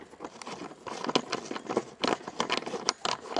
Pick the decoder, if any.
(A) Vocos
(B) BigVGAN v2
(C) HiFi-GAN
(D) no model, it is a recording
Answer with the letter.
D